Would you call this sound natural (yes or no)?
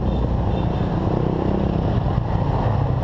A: yes